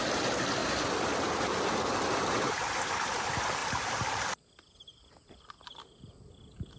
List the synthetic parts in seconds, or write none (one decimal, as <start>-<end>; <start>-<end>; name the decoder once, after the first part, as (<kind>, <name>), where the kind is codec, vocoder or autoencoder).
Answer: 3.6-6.8 (vocoder, BigVGAN v2)